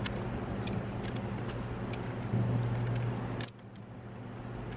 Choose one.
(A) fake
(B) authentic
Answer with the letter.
B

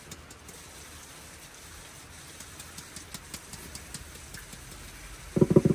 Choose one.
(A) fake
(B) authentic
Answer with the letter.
B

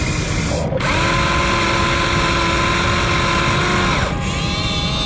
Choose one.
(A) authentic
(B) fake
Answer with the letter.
A